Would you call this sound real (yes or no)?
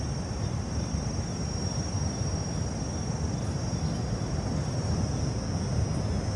yes